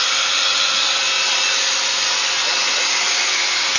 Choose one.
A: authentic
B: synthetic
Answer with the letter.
A